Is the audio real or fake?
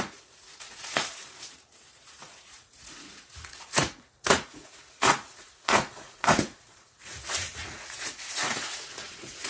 fake